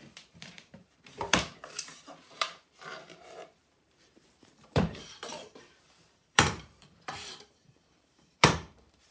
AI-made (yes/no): yes